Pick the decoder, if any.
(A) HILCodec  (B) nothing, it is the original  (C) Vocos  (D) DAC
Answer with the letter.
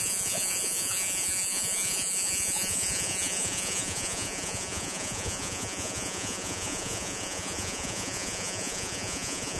C